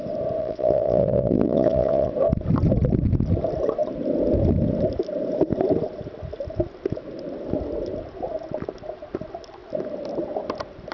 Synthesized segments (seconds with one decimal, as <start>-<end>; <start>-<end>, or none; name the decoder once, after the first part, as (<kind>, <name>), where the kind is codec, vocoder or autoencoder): 0.4-2.1 (vocoder, WaveNeXt)